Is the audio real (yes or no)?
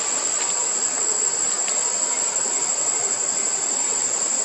yes